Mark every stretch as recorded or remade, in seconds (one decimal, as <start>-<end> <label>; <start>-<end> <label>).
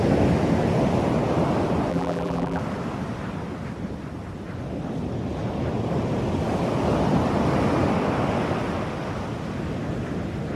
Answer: 0.0-1.9 recorded; 1.9-2.6 remade; 2.6-10.6 recorded